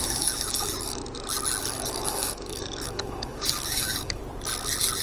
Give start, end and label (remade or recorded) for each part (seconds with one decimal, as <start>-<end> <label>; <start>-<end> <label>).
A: 0.0-1.0 remade; 1.0-1.6 recorded; 1.6-4.2 remade; 4.2-5.0 recorded